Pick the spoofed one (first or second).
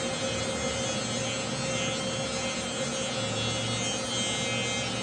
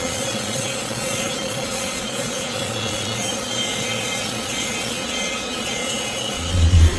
second